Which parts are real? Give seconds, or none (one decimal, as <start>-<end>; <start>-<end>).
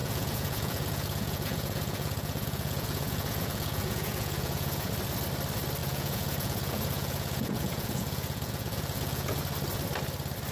4.9-5.8; 9.4-10.5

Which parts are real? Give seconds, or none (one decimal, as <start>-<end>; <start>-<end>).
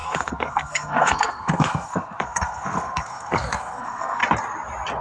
4.2-5.0